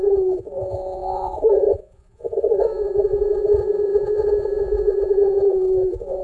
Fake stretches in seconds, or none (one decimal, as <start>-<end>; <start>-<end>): 0.0-6.2